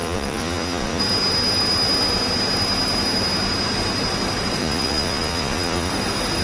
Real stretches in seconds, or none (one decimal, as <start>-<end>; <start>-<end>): 1.0-4.6; 5.9-6.4